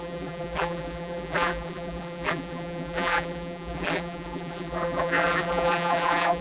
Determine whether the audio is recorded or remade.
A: remade